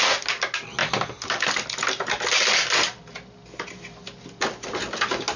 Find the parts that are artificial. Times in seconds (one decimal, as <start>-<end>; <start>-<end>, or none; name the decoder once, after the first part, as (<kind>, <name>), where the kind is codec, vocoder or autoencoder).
none